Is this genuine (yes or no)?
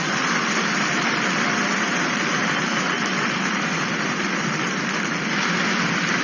no